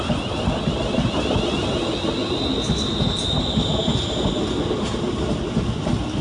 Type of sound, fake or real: real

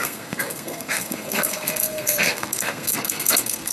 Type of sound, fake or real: fake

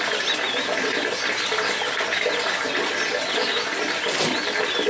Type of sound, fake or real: real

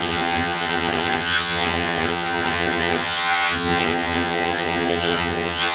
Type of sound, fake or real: fake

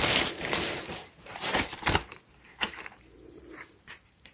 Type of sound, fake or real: fake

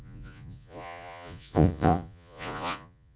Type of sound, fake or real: fake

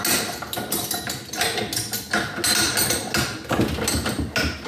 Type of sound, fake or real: real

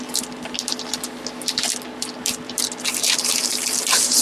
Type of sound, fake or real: real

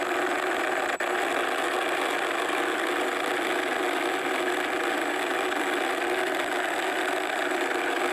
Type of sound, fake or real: real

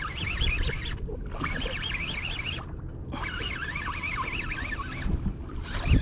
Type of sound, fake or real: real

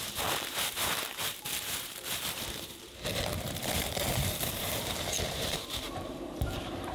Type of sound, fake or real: fake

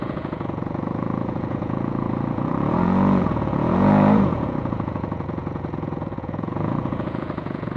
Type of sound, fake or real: fake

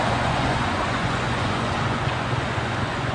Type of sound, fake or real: fake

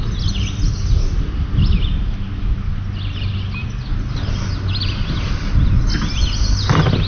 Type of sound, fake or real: real